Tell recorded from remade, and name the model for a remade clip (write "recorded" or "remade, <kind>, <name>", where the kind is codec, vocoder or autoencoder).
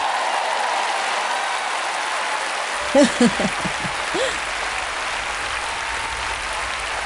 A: recorded